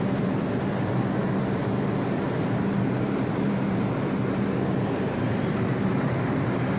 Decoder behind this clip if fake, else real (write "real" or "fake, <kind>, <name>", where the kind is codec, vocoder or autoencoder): fake, vocoder, BigVGAN v2